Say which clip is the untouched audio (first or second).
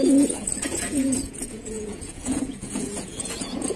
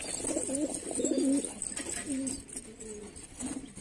second